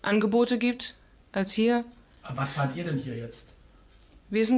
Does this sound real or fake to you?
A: fake